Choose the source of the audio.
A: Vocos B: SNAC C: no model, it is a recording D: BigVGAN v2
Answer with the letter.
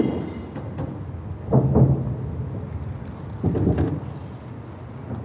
C